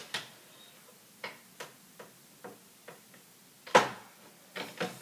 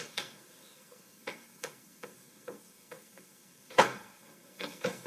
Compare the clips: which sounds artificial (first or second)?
second